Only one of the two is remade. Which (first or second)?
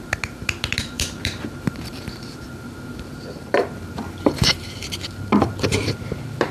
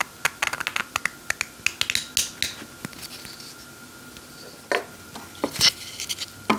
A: first